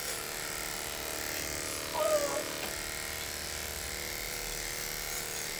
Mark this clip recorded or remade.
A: recorded